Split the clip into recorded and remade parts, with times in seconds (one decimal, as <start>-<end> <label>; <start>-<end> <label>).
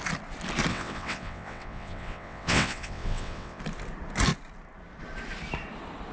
0.0-0.7 recorded; 0.7-3.6 remade; 3.6-6.1 recorded